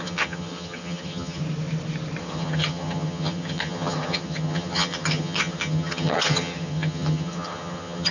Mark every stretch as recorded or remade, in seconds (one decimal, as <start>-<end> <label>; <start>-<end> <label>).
0.0-1.4 remade; 1.4-2.2 recorded; 2.2-8.1 remade